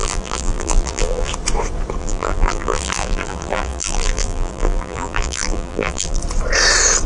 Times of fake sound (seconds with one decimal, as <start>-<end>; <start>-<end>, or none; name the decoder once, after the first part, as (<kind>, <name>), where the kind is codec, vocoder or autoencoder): 0.0-1.3 (vocoder, BigVGAN v2); 2.0-6.2